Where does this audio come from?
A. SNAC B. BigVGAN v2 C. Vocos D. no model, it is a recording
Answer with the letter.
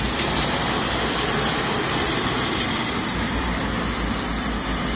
B